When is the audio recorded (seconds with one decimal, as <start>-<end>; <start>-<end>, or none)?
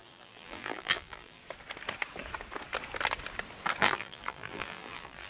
1.4-3.8